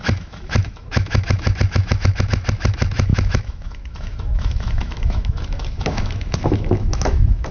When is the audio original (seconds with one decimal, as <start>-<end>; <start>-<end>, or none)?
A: none